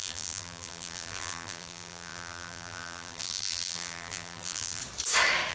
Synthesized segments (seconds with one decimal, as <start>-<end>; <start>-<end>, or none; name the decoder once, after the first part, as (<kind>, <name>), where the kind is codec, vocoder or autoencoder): 0.0-4.8 (vocoder, BigVGAN v2)